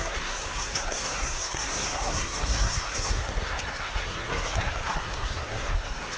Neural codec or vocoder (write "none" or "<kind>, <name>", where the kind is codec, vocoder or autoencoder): codec, SNAC